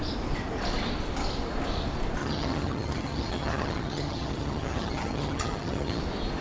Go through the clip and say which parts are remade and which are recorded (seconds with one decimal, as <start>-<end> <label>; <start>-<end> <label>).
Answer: 0.0-2.2 recorded; 2.2-6.0 remade; 6.0-6.4 recorded

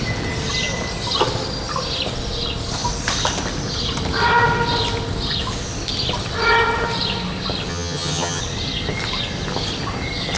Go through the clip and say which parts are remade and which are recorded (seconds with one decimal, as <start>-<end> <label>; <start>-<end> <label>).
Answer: 0.0-7.7 recorded; 7.7-8.4 remade; 8.4-10.4 recorded

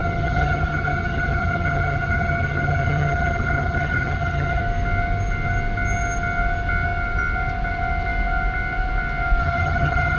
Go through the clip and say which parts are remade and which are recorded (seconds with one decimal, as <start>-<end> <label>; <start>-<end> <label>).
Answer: 0.0-4.6 remade; 4.6-9.4 recorded; 9.4-10.2 remade

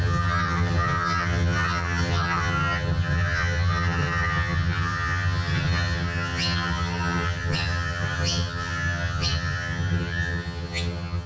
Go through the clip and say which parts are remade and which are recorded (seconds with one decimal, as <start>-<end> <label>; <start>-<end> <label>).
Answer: 0.0-11.3 remade